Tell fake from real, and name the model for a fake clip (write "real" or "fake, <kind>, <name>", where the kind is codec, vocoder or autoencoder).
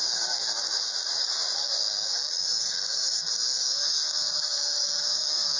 fake, autoencoder, DAC-VAE